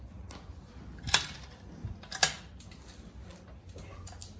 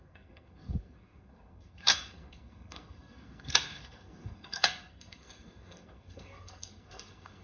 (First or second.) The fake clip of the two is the second